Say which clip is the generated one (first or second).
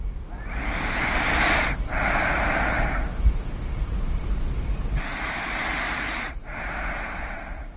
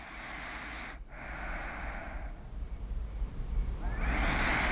first